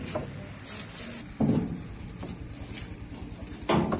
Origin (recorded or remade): recorded